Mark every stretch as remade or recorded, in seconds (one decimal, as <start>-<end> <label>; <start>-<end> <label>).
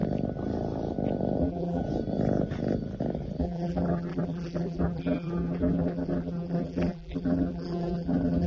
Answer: 0.0-1.4 recorded; 1.4-1.8 remade; 1.8-3.4 recorded; 3.4-8.5 remade